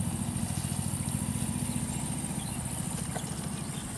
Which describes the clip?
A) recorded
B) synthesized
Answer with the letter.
A